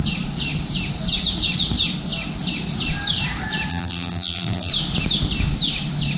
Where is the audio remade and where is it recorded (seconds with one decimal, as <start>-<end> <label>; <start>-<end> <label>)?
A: 0.0-3.7 recorded; 3.7-4.7 remade; 4.7-6.2 recorded